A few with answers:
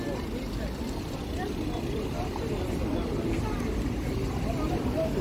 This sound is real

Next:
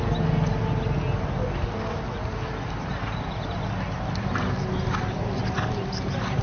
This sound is real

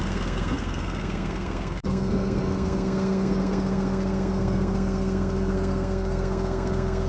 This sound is fake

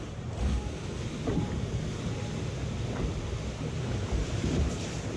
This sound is real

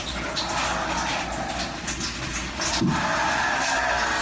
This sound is real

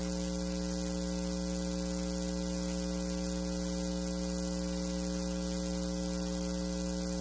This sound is real